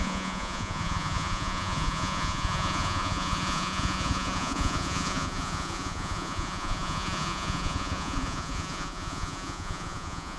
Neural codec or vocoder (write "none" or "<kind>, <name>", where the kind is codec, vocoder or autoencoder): vocoder, Vocos